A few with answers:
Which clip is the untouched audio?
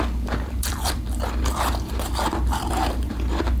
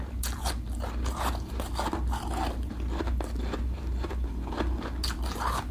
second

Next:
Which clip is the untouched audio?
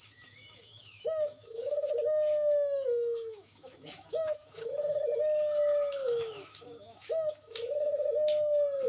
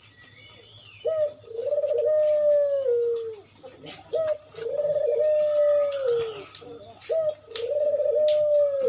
second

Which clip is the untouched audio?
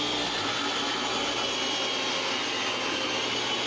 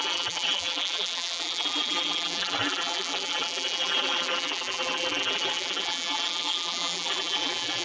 first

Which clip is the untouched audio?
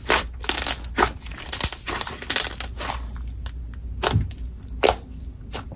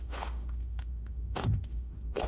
first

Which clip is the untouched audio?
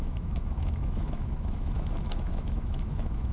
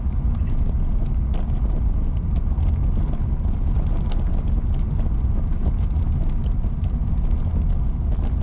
second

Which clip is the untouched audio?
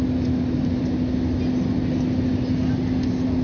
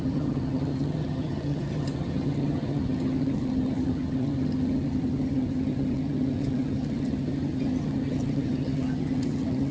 first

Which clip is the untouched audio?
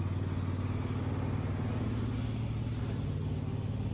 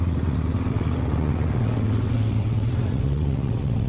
first